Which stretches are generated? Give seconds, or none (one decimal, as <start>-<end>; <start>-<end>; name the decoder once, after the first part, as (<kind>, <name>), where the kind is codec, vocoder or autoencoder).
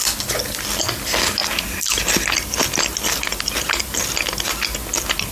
none